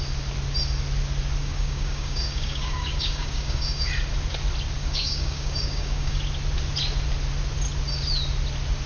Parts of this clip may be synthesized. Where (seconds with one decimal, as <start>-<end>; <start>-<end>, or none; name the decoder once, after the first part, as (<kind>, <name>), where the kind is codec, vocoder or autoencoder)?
1.4-3.9 (codec, DAC); 4.8-6.2